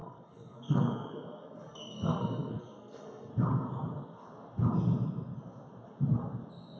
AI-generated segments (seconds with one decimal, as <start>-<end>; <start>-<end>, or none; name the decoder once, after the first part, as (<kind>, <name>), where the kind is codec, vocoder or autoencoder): 0.0-3.3 (codec, SNAC)